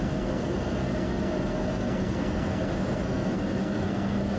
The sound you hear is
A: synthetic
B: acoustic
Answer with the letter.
A